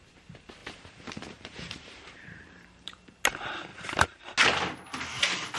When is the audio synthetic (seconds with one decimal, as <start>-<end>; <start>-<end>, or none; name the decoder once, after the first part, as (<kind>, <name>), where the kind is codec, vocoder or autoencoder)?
0.6-3.2 (vocoder, BigVGAN v2); 3.7-4.2